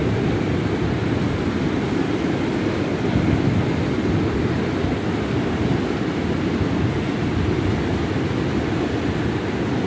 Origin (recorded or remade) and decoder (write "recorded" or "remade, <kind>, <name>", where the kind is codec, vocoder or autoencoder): recorded